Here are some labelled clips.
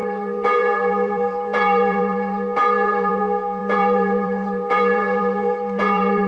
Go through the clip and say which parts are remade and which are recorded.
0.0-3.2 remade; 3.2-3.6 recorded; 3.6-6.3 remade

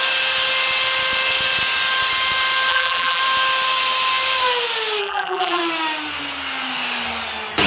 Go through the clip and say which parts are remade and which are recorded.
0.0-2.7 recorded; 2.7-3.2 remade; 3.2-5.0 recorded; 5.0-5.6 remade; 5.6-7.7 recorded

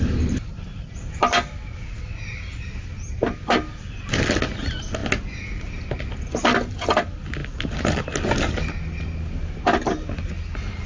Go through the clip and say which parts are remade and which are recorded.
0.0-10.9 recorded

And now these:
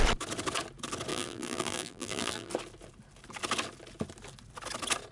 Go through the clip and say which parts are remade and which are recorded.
0.0-1.1 recorded; 1.1-2.5 remade; 2.5-5.1 recorded

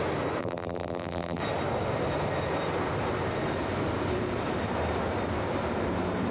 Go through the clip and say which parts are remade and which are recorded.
0.0-0.4 recorded; 0.4-1.4 remade; 1.4-6.3 recorded

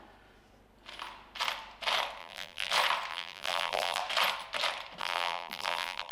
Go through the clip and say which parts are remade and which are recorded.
0.0-2.2 recorded; 2.2-2.7 remade; 2.7-3.1 recorded; 3.1-4.0 remade; 4.0-5.0 recorded; 5.0-6.1 remade

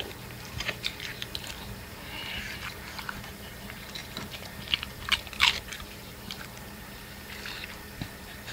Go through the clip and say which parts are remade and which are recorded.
0.0-1.1 remade; 1.1-1.6 recorded; 1.6-8.5 remade